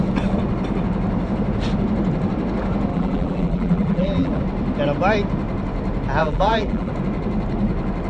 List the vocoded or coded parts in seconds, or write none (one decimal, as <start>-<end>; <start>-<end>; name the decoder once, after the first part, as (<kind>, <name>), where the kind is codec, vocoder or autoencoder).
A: 2.9-4.4 (vocoder, BigVGAN v2); 6.2-6.9